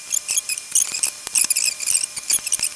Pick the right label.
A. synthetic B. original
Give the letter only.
A